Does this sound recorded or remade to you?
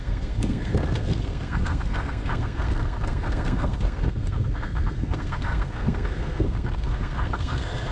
remade